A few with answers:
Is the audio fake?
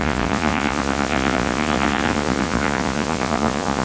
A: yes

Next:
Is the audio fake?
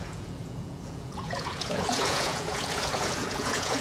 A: yes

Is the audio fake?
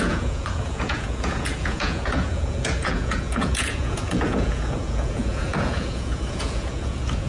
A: yes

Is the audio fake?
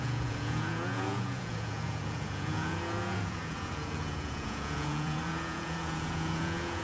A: yes